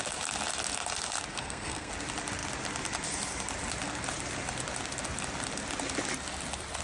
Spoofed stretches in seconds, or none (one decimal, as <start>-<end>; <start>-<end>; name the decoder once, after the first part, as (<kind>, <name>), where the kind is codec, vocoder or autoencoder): 1.3-1.9 (codec, SNAC)